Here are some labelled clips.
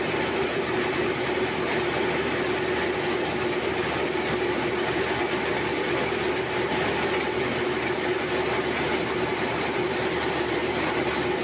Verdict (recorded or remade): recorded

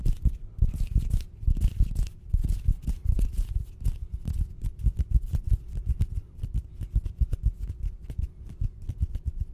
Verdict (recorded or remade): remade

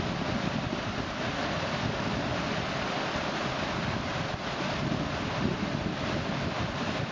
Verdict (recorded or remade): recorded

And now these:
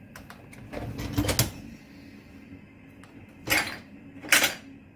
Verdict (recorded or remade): recorded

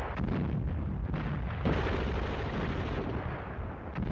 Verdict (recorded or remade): recorded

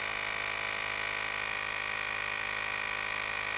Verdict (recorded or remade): recorded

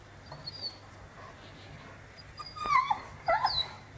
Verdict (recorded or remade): recorded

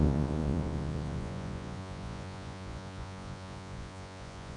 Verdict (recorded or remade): remade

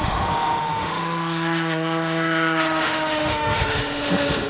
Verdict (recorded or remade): remade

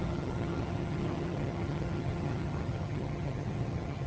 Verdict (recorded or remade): remade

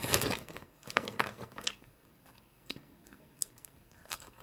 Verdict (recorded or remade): remade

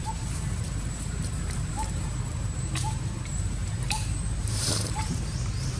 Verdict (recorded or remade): remade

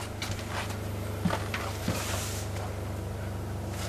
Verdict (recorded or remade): recorded